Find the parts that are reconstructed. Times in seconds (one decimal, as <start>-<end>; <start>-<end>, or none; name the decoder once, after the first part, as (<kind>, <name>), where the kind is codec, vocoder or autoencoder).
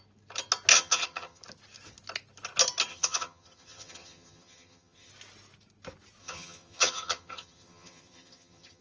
0.7-1.4 (vocoder, HiFi-GAN); 2.9-5.1; 6.2-8.8